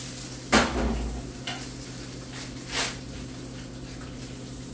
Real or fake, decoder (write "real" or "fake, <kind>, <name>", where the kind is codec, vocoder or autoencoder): real